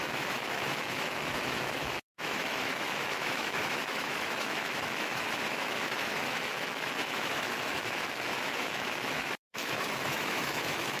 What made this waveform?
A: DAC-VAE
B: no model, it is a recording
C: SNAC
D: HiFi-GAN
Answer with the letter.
A